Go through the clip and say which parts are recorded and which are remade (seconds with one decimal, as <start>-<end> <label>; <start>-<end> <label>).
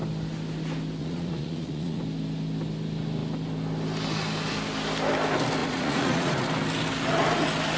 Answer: 0.0-1.0 recorded; 1.0-2.0 remade; 2.0-5.6 recorded; 5.6-6.4 remade; 6.4-7.8 recorded